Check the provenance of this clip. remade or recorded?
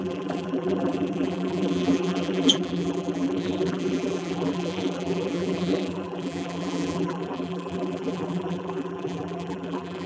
remade